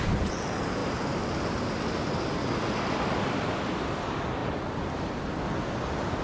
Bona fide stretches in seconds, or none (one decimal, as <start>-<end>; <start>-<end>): 0.0-0.8; 3.9-4.4; 5.1-6.2

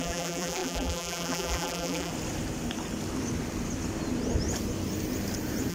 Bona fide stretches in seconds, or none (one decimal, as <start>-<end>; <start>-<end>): 2.1-5.7

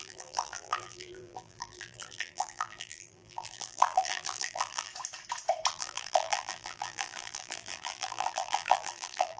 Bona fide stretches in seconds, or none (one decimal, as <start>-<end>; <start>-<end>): 4.9-5.7

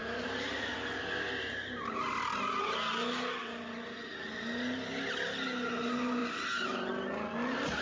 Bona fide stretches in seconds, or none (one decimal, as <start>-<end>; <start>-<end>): 0.0-6.2; 6.9-7.8

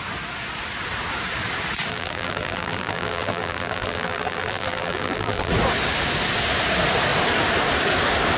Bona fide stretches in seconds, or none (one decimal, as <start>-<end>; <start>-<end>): 0.0-1.9; 5.5-8.4

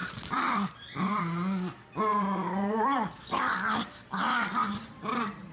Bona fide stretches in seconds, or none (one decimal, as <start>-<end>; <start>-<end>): 1.2-2.1; 3.2-4.6

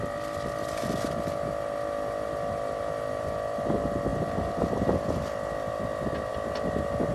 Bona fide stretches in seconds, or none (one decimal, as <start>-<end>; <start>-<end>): 0.0-7.1